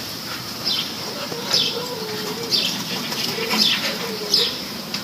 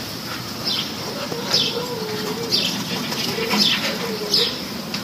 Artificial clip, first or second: first